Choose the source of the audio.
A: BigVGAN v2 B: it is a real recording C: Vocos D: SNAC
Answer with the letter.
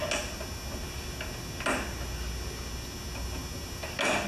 B